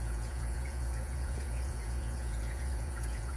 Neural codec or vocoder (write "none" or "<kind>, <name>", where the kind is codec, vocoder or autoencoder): vocoder, Vocos